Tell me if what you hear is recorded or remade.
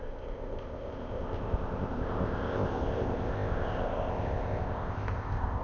remade